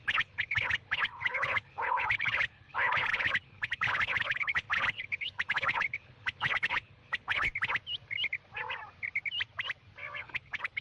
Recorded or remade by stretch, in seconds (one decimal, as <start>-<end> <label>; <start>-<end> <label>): 0.0-7.5 remade; 7.5-10.2 recorded; 10.2-10.8 remade